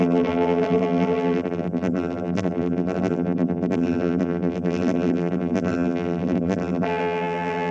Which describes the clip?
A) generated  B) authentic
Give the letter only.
A